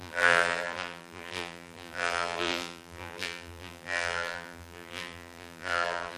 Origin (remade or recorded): remade